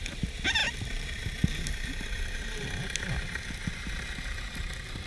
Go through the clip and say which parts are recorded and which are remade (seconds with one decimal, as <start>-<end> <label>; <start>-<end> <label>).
0.0-5.1 recorded